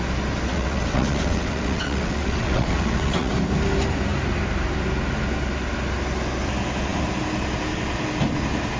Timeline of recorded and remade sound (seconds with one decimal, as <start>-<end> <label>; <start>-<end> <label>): 0.0-0.5 recorded; 0.5-3.3 remade; 3.3-8.8 recorded